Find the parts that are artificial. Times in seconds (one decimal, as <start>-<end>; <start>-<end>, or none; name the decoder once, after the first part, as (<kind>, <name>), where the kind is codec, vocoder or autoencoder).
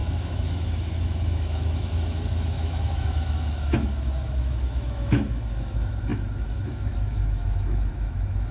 0.0-8.5 (autoencoder, DAC-VAE)